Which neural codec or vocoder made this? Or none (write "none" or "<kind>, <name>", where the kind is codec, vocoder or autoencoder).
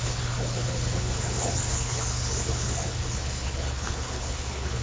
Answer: codec, HILCodec